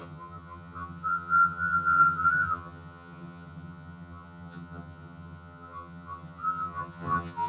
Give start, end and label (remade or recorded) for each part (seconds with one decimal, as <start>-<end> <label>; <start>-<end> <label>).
0.0-7.5 remade